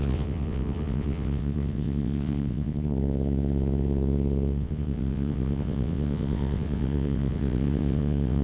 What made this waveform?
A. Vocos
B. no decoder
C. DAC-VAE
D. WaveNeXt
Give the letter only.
D